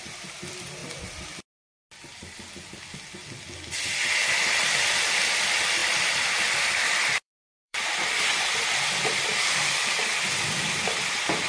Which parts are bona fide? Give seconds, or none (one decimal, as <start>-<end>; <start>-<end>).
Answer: 0.8-5.0; 5.8-6.5